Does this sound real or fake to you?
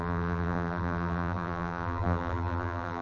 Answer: fake